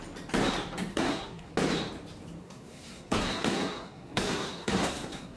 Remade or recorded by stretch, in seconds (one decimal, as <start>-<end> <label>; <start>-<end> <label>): 0.0-0.9 recorded; 0.9-1.5 remade; 1.5-2.4 recorded; 2.4-5.4 remade